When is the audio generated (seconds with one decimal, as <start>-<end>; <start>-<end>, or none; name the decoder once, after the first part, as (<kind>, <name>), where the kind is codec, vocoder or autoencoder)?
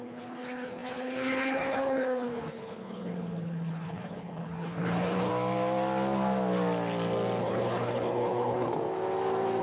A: 0.0-5.3 (codec, HILCodec); 7.4-8.7